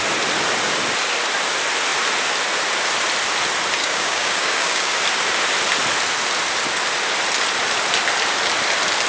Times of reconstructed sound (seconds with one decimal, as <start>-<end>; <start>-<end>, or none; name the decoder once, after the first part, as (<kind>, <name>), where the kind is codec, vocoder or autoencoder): 3.8-5.0 (codec, DAC)